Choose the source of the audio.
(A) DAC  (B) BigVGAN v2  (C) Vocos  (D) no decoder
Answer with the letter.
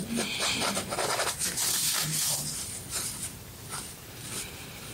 B